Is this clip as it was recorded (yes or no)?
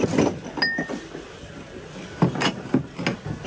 yes